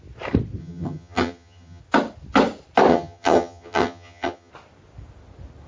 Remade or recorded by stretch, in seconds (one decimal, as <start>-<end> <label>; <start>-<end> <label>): 0.0-0.6 recorded; 0.6-1.8 remade; 1.8-2.9 recorded; 2.9-4.5 remade; 4.5-5.7 recorded